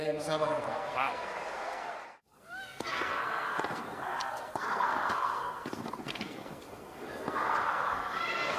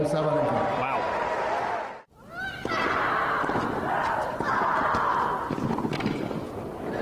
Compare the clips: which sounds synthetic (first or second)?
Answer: first